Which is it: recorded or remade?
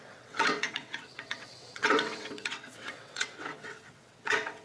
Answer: remade